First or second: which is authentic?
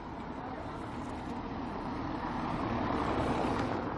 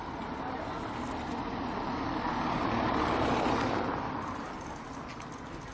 second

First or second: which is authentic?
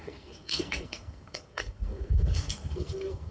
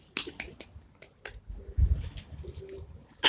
second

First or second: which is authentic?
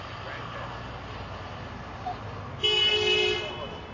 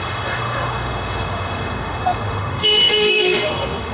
first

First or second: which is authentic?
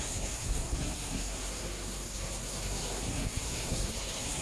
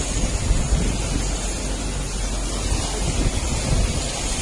second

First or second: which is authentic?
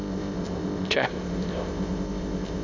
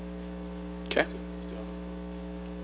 second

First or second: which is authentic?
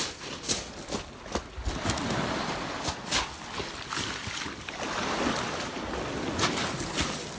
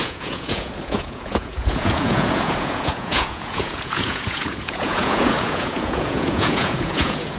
first